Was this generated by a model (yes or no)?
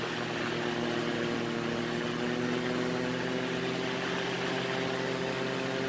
no